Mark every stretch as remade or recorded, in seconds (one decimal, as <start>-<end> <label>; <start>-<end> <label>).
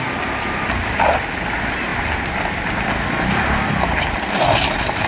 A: 0.0-5.1 recorded